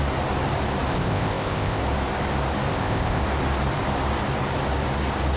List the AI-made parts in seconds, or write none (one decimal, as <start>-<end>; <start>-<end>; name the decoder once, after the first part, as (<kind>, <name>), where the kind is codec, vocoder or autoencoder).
0.9-1.8 (codec, ZipCodec); 2.7-3.2